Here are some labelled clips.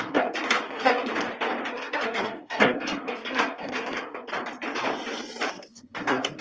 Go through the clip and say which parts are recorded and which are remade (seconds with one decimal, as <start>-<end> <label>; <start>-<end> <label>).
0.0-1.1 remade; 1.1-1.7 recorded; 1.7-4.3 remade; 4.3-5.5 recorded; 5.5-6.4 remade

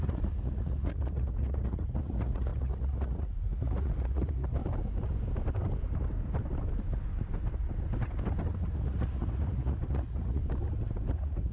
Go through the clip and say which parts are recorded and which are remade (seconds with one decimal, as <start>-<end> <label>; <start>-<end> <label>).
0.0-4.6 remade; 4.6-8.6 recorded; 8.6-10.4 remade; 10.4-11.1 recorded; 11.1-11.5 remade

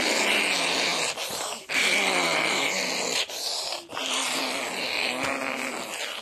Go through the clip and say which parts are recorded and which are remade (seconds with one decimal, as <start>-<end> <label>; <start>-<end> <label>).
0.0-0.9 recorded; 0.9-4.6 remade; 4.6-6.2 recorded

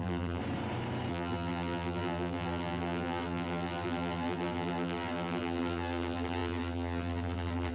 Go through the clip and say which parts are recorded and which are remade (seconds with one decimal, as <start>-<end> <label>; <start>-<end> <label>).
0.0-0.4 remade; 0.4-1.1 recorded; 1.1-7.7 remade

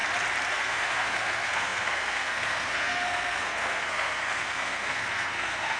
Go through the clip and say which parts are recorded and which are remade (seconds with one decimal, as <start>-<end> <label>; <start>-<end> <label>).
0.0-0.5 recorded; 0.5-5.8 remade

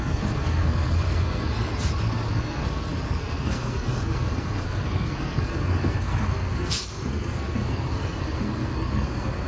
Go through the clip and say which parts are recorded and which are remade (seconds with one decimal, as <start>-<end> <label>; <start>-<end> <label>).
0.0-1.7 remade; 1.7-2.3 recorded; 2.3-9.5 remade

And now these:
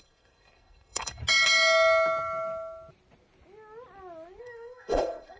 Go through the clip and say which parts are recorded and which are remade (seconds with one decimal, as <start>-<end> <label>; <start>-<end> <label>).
0.0-1.2 remade; 1.2-4.4 recorded; 4.4-5.4 remade